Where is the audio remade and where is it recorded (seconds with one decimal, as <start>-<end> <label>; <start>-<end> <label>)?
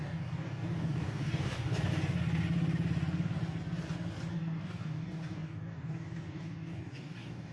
0.0-1.9 remade; 1.9-4.3 recorded; 4.3-7.5 remade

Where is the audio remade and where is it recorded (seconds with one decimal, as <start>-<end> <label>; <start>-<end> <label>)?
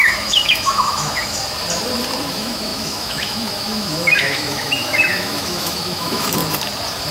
0.0-1.4 remade; 1.4-2.3 recorded; 2.3-6.4 remade; 6.4-7.1 recorded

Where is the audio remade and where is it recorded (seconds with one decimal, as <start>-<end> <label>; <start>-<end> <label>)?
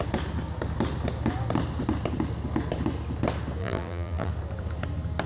0.0-3.6 recorded; 3.6-4.3 remade; 4.3-5.3 recorded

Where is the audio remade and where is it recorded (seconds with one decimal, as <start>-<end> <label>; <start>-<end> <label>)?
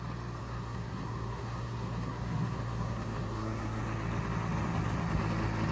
0.0-0.4 recorded; 0.4-3.8 remade; 3.8-5.7 recorded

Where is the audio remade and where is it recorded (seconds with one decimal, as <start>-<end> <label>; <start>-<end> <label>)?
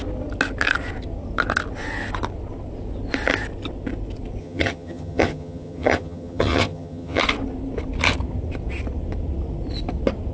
0.0-4.4 recorded; 4.4-7.2 remade; 7.2-10.3 recorded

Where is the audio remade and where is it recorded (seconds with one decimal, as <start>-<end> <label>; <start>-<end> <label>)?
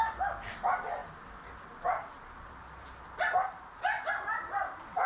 0.0-5.1 recorded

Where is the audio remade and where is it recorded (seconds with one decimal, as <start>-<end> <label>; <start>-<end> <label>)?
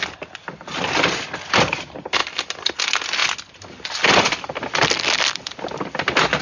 0.0-6.4 recorded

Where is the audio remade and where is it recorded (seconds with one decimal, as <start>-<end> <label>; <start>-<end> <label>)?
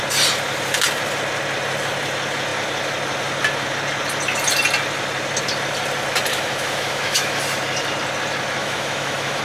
0.0-6.3 recorded; 6.3-7.4 remade; 7.4-8.6 recorded; 8.6-9.4 remade